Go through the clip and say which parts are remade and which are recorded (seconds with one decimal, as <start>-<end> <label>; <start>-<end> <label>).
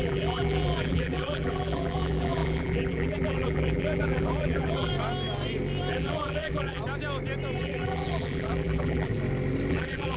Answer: 0.0-4.9 remade; 4.9-5.9 recorded; 5.9-6.8 remade; 6.8-7.6 recorded; 7.6-9.1 remade; 9.1-9.7 recorded; 9.7-10.2 remade